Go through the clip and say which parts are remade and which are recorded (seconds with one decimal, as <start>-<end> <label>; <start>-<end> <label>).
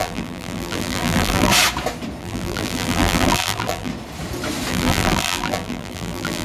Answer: 0.0-1.5 remade; 1.5-2.2 recorded; 2.2-3.9 remade; 3.9-4.7 recorded; 4.7-6.4 remade